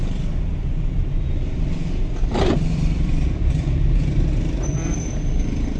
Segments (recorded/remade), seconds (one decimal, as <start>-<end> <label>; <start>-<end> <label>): 0.0-0.5 recorded; 0.5-4.0 remade; 4.0-5.8 recorded